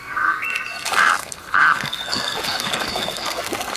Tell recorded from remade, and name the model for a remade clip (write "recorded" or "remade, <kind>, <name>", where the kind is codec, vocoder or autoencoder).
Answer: remade, codec, SNAC